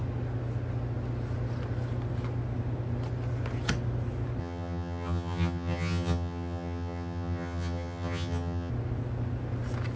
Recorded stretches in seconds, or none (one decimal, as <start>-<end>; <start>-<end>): 0.0-4.4; 8.7-10.0